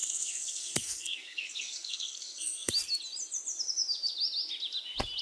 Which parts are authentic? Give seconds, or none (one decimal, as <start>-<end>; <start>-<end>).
2.7-5.2